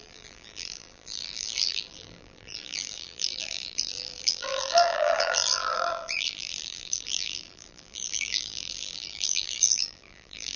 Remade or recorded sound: remade